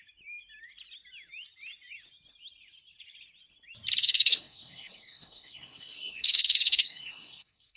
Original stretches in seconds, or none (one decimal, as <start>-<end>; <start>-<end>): 0.0-4.0